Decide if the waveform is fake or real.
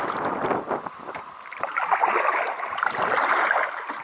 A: real